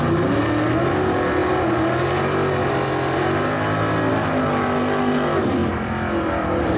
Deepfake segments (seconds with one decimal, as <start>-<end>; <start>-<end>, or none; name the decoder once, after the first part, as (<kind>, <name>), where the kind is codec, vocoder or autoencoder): 5.6-6.8 (vocoder, BigVGAN v2)